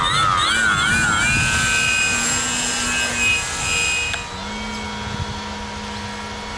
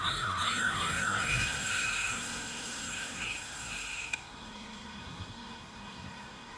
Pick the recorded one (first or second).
first